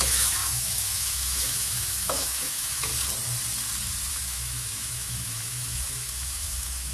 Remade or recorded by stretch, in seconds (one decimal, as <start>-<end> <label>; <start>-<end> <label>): 0.0-2.9 remade; 2.9-4.1 recorded; 4.1-6.9 remade